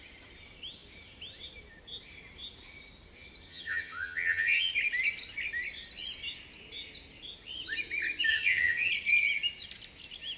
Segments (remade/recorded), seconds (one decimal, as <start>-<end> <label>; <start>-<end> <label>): 0.0-3.5 recorded; 3.5-4.7 remade; 4.7-8.3 recorded; 8.3-8.9 remade; 8.9-10.4 recorded